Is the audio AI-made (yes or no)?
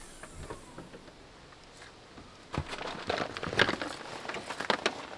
no